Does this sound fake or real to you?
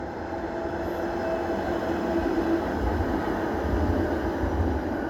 real